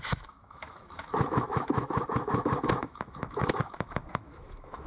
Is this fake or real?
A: fake